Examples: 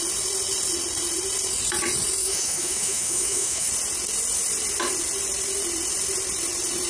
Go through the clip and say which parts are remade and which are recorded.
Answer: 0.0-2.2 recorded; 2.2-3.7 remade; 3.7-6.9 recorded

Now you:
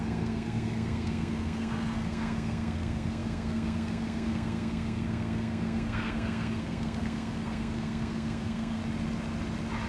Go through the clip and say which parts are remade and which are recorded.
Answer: 0.0-8.8 remade; 8.8-9.9 recorded

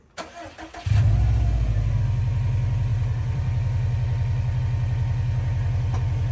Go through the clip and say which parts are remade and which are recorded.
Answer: 0.0-2.9 recorded; 2.9-4.6 remade; 4.6-6.3 recorded